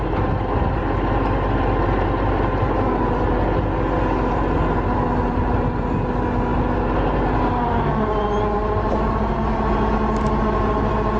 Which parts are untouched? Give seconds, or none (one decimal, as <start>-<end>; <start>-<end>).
0.0-11.2